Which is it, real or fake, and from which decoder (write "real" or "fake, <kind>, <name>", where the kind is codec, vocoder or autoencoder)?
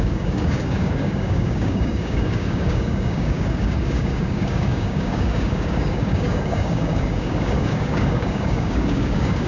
fake, codec, DAC